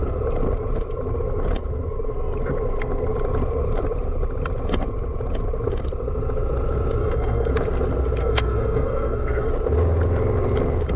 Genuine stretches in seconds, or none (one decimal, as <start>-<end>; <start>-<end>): 0.0-7.0; 7.5-8.2; 9.5-11.0